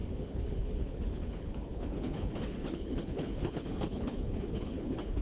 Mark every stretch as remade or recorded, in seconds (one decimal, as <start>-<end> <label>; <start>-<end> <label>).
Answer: 0.0-5.2 remade